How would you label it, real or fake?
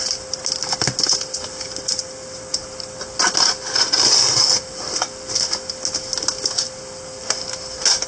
real